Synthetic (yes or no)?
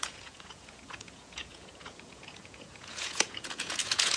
yes